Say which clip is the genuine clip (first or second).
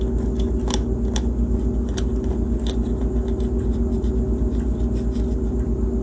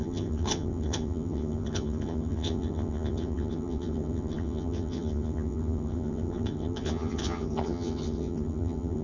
first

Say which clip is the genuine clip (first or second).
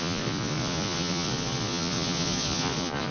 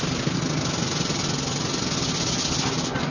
second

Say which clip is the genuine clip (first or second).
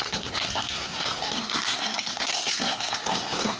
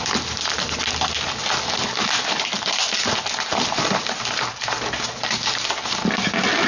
second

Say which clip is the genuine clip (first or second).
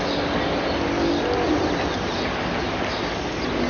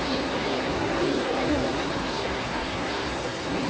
first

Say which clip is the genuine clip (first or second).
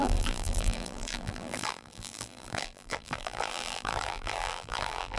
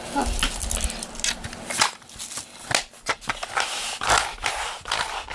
second